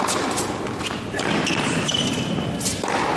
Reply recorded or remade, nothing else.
recorded